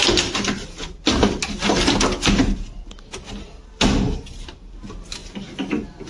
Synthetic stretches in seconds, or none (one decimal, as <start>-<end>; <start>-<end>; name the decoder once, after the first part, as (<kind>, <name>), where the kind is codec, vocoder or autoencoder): none